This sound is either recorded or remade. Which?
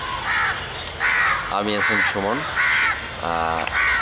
recorded